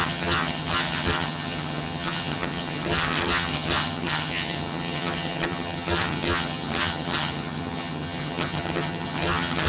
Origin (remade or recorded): remade